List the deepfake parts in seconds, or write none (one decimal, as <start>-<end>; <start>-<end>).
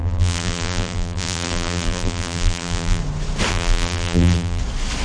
0.0-3.0; 3.5-4.6